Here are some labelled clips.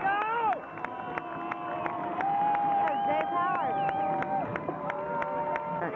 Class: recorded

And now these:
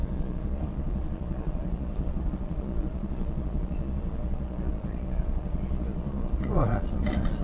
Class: remade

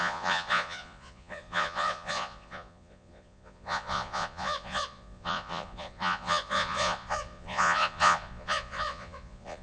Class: remade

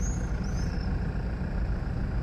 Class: recorded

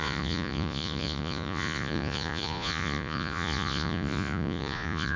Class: remade